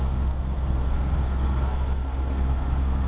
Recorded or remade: remade